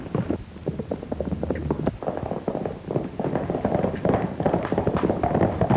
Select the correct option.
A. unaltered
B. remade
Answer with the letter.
A